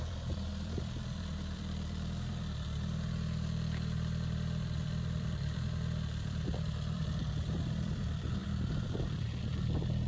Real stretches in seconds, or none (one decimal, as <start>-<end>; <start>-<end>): none